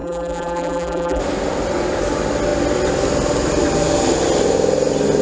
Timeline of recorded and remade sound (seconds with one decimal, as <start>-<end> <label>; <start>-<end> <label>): 0.0-1.2 remade; 1.2-5.2 recorded